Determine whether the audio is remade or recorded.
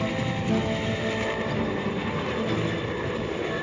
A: recorded